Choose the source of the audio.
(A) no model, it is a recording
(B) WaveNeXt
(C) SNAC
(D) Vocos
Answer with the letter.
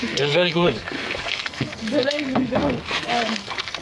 C